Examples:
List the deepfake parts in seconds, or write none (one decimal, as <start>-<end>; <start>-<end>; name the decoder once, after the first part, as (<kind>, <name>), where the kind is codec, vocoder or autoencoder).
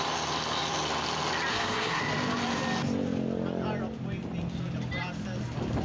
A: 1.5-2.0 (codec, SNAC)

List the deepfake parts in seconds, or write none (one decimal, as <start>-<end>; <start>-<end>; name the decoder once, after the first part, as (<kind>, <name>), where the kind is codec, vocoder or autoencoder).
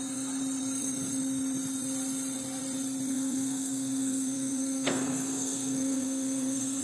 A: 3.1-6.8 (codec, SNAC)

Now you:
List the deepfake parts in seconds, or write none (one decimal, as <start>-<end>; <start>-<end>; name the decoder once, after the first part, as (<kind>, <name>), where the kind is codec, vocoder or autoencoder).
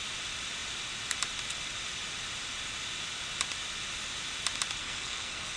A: 4.8-5.6 (codec, SNAC)